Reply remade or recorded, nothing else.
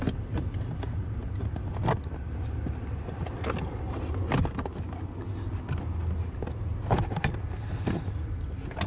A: recorded